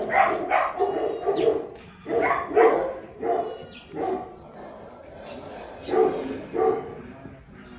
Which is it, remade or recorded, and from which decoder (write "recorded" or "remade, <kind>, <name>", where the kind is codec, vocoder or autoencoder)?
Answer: recorded